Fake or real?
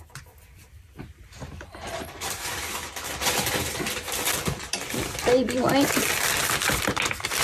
fake